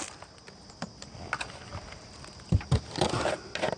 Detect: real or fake real